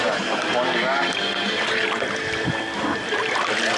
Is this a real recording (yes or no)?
yes